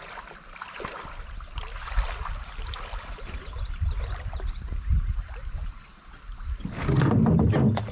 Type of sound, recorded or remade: recorded